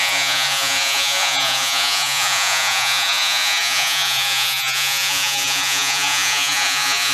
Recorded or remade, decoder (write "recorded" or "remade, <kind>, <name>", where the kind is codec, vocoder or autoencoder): remade, vocoder, Vocos